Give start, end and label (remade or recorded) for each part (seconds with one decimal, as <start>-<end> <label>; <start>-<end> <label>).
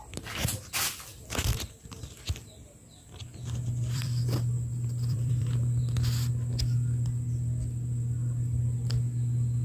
0.0-1.1 recorded; 1.1-6.3 remade; 6.3-9.6 recorded